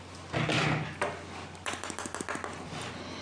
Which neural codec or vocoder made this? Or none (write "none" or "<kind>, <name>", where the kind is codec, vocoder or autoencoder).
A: none